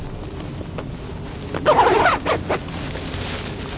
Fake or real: real